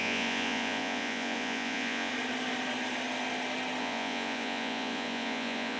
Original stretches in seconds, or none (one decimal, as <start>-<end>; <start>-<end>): 2.1-3.8